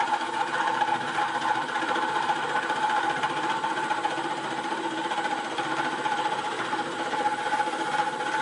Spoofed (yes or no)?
yes